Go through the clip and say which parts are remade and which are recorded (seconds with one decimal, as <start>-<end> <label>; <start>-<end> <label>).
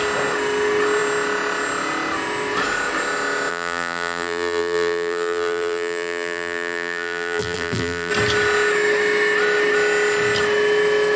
0.0-3.5 recorded; 3.5-8.1 remade; 8.1-11.2 recorded